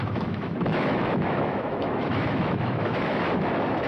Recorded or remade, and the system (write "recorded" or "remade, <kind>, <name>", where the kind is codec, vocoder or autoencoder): remade, autoencoder, DAC-VAE